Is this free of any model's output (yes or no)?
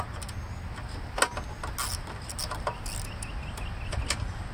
yes